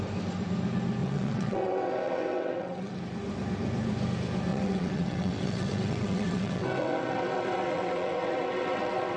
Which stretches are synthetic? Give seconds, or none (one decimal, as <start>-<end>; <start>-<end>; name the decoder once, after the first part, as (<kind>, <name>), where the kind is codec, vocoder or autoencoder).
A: 1.0-3.0 (vocoder, WaveNeXt); 4.5-9.2